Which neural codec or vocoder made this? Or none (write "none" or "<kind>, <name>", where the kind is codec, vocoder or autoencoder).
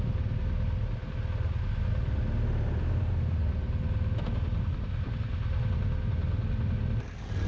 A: none